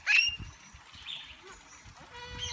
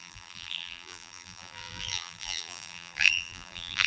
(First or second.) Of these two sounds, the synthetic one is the second